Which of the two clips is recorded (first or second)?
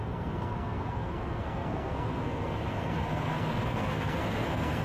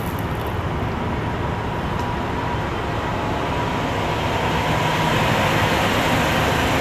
second